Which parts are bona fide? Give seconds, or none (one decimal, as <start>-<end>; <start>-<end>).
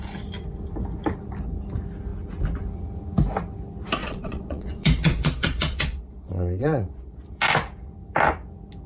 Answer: 0.0-4.0; 7.4-8.9